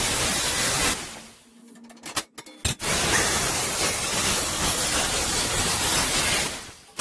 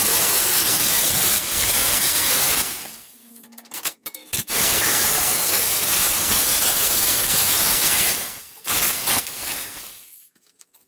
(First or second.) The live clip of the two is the first